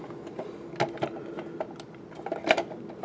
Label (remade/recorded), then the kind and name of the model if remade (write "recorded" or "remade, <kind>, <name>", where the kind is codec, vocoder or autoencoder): recorded